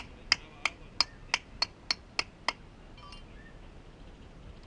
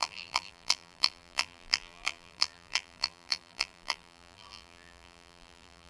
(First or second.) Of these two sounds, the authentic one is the first